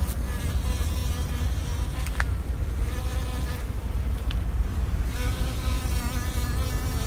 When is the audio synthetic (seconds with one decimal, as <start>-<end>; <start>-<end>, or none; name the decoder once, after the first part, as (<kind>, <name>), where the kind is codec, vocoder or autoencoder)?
4.7-5.8 (codec, DAC)